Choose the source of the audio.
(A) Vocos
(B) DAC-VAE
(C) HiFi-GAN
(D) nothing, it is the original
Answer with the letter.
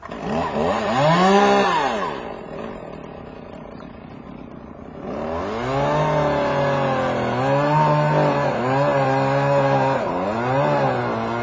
D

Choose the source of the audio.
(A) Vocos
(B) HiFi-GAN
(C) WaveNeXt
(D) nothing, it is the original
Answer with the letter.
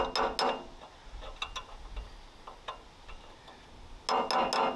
D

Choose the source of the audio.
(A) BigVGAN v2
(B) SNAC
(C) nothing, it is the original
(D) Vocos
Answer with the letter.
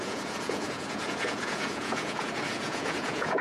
D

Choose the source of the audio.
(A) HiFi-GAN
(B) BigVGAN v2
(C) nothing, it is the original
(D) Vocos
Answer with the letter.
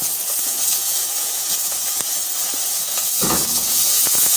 D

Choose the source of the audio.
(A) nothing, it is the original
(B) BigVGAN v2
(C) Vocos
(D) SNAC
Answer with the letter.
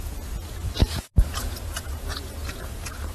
C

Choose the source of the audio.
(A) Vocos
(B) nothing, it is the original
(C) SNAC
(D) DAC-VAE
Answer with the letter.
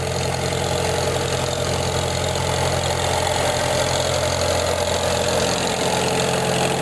B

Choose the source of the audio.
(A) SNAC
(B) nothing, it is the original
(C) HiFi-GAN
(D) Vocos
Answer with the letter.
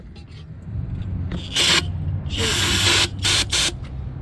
B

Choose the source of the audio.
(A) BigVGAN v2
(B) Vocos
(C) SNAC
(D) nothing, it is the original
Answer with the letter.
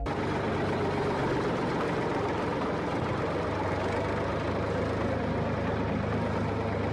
D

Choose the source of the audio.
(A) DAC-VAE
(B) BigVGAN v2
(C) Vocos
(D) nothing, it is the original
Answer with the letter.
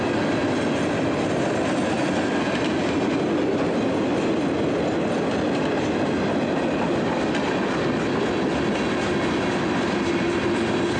D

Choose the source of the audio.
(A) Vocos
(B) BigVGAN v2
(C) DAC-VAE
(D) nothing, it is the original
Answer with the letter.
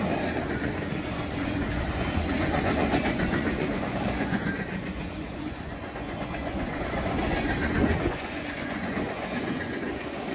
A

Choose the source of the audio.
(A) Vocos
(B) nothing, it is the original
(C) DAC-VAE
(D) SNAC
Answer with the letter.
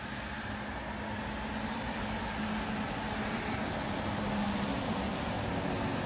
B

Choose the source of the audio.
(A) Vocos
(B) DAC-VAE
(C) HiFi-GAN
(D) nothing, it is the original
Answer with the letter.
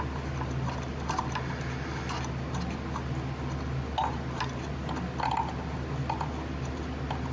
D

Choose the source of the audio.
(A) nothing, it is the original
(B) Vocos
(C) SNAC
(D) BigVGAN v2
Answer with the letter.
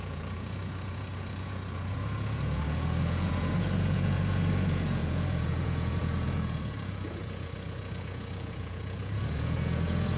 B